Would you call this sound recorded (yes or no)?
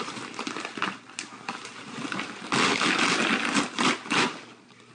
yes